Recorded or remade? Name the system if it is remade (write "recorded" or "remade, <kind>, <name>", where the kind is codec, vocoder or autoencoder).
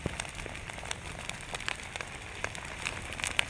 remade, vocoder, BigVGAN v2